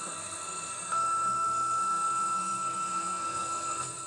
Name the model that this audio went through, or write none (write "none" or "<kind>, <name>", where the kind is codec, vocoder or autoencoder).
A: codec, SNAC